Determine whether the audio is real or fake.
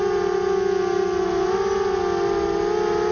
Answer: real